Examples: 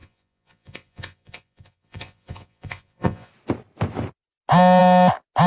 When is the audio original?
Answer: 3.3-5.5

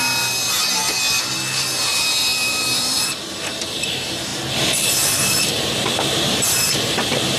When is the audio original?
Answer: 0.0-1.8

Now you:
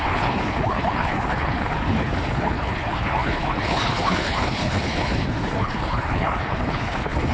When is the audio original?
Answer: none

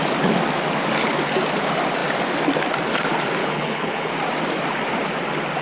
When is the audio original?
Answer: 0.0-3.4; 4.1-5.6